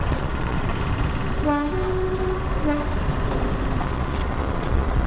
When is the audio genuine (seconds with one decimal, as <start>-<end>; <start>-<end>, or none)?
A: 0.7-3.8